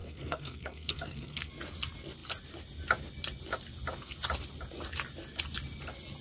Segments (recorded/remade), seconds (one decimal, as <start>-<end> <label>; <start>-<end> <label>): 0.0-1.5 remade; 1.5-6.2 recorded